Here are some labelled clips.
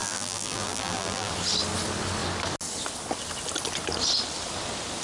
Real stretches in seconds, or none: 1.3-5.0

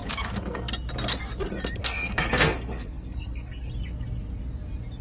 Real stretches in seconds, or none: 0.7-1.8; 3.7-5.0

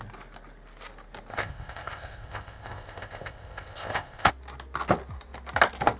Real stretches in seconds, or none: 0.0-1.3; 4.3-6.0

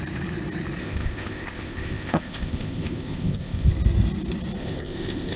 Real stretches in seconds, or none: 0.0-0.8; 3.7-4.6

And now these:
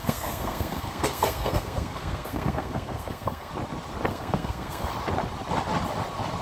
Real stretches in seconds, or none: 3.5-4.1; 4.9-6.4